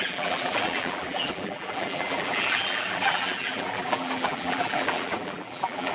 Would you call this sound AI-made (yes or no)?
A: yes